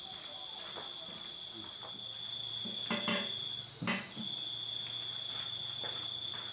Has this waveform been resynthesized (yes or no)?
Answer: no